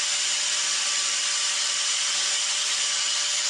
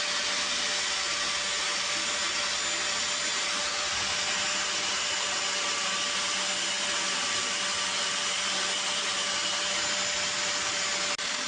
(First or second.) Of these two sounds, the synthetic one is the first